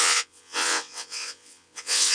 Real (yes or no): no